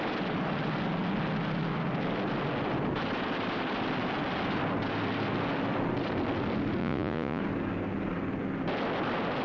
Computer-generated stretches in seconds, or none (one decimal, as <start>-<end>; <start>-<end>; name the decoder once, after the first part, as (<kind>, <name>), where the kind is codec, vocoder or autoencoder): 6.8-7.4 (vocoder, Vocos)